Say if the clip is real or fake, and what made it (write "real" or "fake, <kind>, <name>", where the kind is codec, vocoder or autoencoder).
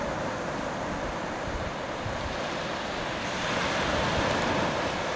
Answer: real